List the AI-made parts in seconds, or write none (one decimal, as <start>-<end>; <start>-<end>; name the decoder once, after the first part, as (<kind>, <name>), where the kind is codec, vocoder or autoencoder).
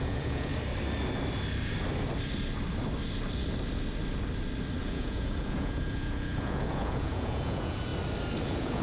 0.0-0.5 (vocoder, Vocos); 4.8-7.9; 8.4-8.8